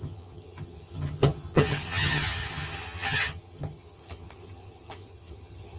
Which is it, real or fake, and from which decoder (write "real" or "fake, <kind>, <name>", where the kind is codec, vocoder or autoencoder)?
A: fake, vocoder, HiFi-GAN